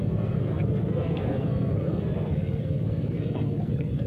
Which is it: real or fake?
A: fake